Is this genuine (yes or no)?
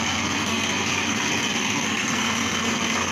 no